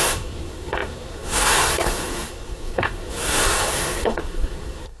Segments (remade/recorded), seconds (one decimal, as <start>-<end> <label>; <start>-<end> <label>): 0.0-5.0 remade